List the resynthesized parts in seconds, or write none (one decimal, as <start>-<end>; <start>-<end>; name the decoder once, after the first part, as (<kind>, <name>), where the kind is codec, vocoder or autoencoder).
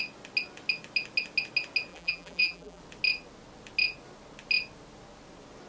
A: 1.9-2.8 (vocoder, BigVGAN v2)